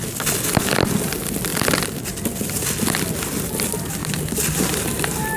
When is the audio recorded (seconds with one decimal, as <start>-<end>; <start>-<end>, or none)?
0.0-4.0; 4.6-5.4